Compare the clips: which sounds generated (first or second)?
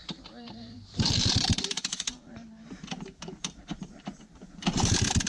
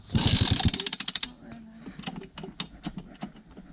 first